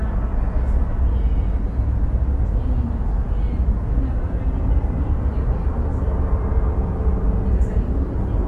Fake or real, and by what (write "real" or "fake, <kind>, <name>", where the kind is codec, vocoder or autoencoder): real